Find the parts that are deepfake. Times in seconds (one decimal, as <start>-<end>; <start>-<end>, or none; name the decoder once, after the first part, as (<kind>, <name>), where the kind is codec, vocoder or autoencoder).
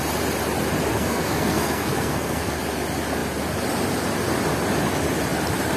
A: 0.9-2.6 (codec, SNAC)